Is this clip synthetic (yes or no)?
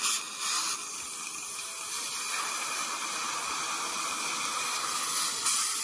no